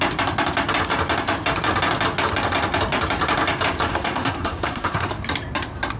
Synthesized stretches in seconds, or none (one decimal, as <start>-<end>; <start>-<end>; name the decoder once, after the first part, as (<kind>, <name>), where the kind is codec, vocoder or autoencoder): 3.9-5.1 (codec, SNAC)